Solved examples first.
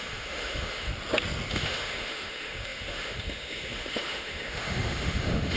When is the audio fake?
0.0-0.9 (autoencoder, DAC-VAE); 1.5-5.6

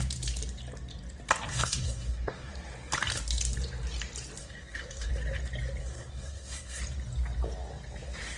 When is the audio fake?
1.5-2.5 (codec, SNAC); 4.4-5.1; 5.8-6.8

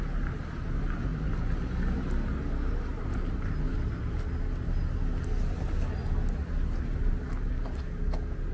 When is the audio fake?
none

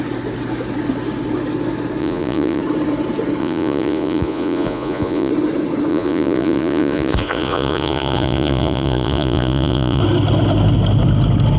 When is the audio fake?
2.0-2.6 (vocoder, Vocos); 3.4-5.3; 5.9-10.0

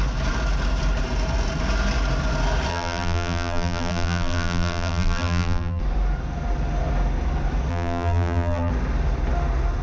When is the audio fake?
2.7-5.8 (vocoder, BigVGAN v2); 7.7-8.7